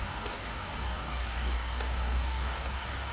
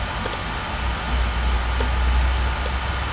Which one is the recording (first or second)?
second